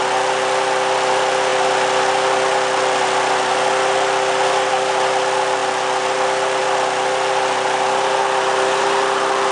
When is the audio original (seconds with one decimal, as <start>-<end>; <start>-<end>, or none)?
0.0-9.5